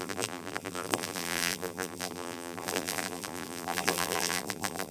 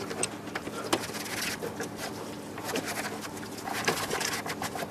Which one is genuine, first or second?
second